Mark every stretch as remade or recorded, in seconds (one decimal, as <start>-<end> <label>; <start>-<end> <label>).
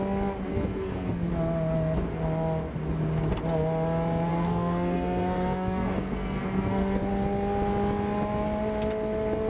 0.0-0.5 recorded; 0.5-1.3 remade; 1.3-4.3 recorded; 4.3-7.0 remade; 7.0-9.5 recorded